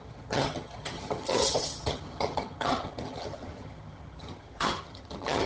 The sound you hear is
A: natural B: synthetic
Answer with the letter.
B